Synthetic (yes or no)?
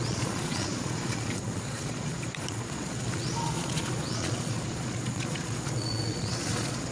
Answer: yes